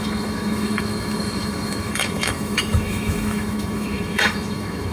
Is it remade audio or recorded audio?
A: remade